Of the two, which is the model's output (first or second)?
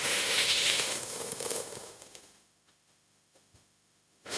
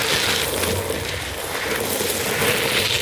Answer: first